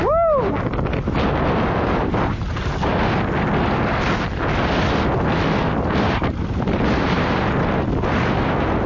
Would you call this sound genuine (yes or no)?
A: yes